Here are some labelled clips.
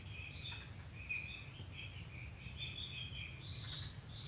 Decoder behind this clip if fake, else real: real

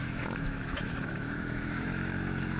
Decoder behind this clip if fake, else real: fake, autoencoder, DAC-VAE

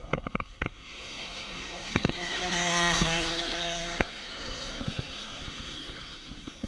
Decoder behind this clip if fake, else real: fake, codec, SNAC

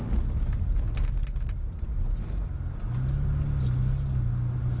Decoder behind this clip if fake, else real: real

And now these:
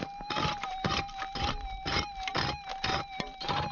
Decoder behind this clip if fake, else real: fake, vocoder, BigVGAN v2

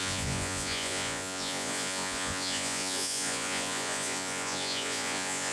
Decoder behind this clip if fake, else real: fake, vocoder, Vocos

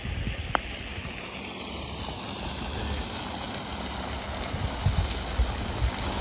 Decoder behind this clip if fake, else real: real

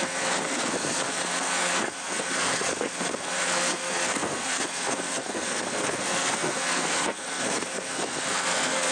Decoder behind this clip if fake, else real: fake, codec, SNAC